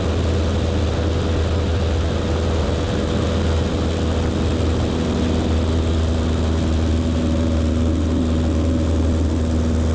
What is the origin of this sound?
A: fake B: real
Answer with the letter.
B